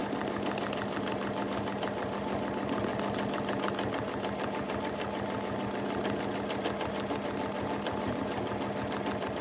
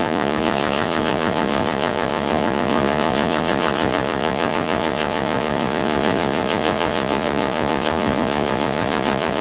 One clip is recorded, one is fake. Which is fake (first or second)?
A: second